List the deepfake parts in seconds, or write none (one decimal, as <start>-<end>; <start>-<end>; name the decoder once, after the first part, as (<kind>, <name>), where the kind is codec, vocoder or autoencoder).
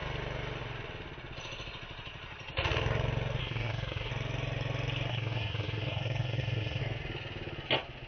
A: 3.4-4.1 (codec, SNAC); 5.1-6.8